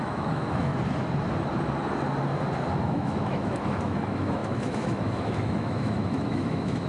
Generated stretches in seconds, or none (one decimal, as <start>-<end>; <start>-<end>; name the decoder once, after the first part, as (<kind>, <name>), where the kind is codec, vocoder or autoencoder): 0.0-0.7 (autoencoder, DAC-VAE); 2.8-6.9